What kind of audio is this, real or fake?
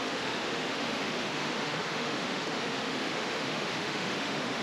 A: fake